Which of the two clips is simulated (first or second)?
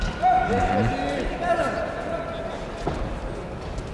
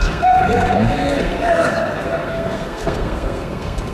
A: second